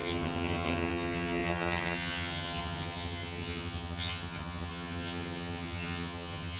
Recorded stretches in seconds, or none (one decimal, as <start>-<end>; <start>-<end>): none